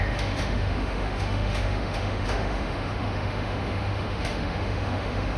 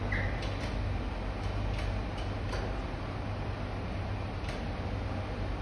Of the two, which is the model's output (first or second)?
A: first